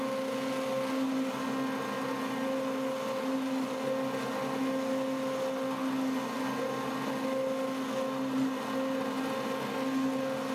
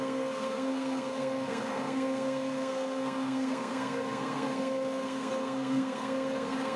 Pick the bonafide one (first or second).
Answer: first